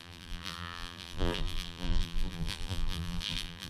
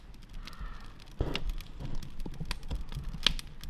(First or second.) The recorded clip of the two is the second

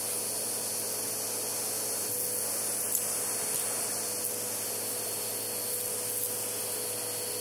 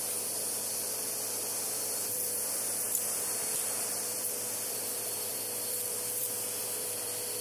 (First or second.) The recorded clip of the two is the first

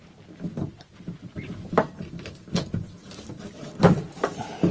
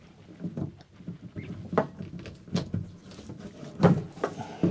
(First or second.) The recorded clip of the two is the second